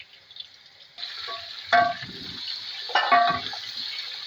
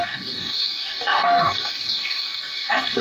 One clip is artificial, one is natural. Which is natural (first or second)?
first